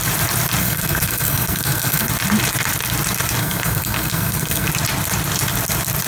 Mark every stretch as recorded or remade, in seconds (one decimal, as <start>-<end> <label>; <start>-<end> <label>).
0.0-0.6 recorded; 0.6-2.1 remade; 2.1-3.4 recorded; 3.4-4.7 remade; 4.7-6.1 recorded

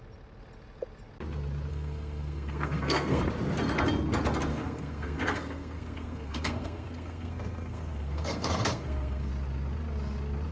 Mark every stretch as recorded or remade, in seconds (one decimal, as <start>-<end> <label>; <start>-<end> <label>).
0.0-1.7 recorded; 1.7-3.2 remade; 3.2-4.5 recorded; 4.5-9.3 remade; 9.3-10.5 recorded

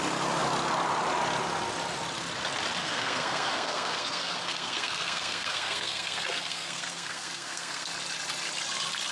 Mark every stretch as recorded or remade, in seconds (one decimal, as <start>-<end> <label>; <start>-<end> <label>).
0.0-2.8 recorded; 2.8-7.9 remade; 7.9-9.1 recorded